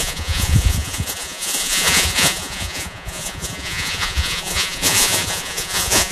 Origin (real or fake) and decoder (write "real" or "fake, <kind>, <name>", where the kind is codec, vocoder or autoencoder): fake, vocoder, Vocos